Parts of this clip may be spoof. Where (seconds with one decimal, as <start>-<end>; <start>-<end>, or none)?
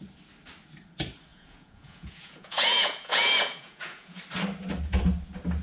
1.3-4.2